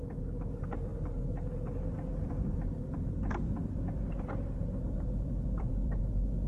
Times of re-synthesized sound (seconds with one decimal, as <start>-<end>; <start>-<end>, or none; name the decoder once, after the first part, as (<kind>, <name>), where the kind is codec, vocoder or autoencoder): 2.8-6.0 (vocoder, BigVGAN v2)

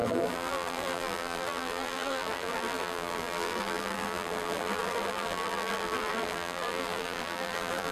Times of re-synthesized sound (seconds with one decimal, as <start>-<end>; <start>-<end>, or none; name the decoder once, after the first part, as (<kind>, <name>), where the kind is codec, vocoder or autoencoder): 0.0-7.9 (vocoder, BigVGAN v2)